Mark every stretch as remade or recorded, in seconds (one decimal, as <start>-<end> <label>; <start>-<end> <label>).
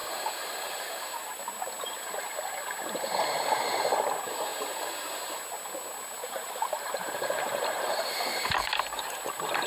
0.0-1.4 remade; 1.4-6.2 recorded; 6.2-9.7 remade